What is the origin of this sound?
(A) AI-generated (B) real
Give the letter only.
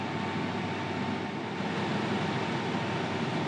B